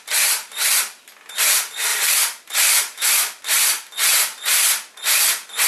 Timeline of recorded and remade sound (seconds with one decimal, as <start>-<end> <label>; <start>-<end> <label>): 0.0-1.9 recorded; 1.9-3.2 remade; 3.2-5.7 recorded